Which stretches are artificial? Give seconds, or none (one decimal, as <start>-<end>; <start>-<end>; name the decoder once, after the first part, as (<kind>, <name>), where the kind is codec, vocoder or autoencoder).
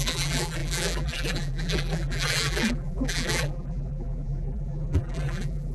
0.0-5.7 (vocoder, BigVGAN v2)